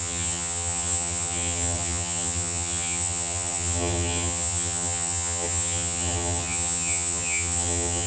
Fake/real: fake